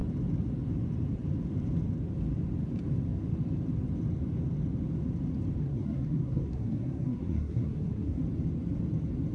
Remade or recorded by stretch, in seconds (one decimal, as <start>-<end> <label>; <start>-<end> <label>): 0.0-5.6 recorded; 5.6-8.2 remade; 8.2-9.3 recorded